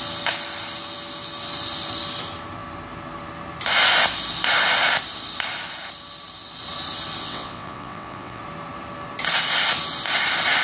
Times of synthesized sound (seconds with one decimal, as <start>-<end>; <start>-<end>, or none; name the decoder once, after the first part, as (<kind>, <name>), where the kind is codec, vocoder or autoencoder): 7.2-8.4 (vocoder, WaveNeXt)